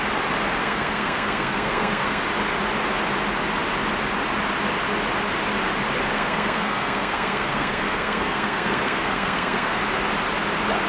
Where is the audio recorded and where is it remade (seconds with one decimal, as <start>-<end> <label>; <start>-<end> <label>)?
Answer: 0.0-0.6 recorded; 0.6-2.2 remade; 2.2-6.1 recorded; 6.1-9.8 remade; 9.8-10.9 recorded

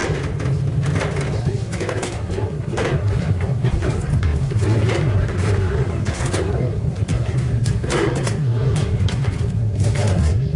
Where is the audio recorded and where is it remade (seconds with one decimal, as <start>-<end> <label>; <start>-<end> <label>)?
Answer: 0.0-1.4 recorded; 1.4-10.6 remade

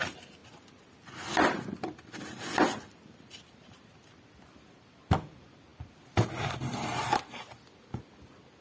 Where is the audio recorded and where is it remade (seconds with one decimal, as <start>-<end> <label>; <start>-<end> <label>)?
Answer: 0.0-8.6 recorded

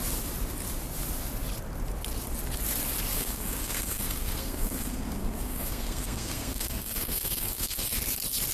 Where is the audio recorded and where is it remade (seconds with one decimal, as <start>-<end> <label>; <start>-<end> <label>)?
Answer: 0.0-3.1 recorded; 3.1-8.0 remade; 8.0-8.5 recorded

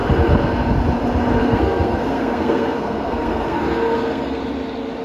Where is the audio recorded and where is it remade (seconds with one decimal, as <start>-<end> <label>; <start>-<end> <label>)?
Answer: 0.0-1.4 recorded; 1.4-4.4 remade; 4.4-5.0 recorded

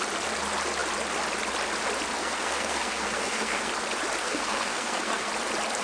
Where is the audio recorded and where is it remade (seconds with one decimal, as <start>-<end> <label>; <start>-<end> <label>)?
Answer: 0.0-2.2 recorded; 2.2-3.7 remade; 3.7-4.2 recorded; 4.2-5.3 remade; 5.3-5.8 recorded